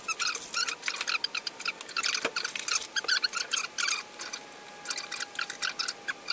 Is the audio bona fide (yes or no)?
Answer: yes